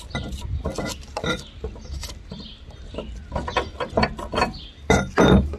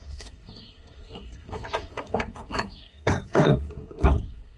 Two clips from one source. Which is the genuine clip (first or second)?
first